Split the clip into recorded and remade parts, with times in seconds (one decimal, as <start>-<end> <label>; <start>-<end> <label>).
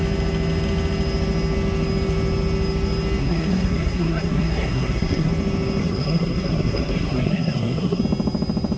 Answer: 0.0-3.2 recorded; 3.2-5.3 remade; 5.3-5.8 recorded; 5.8-8.0 remade; 8.0-8.8 recorded